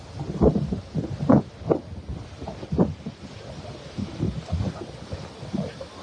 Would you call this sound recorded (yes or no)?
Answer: yes